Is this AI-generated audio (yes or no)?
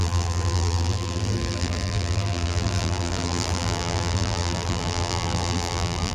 yes